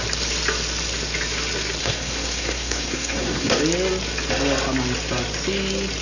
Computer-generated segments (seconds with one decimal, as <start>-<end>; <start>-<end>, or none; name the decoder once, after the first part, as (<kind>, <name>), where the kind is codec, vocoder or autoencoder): 1.8-3.6 (codec, SNAC)